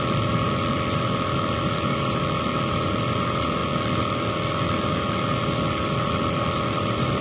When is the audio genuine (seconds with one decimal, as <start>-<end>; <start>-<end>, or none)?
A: 3.6-4.9